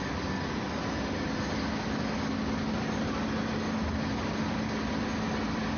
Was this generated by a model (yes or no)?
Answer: no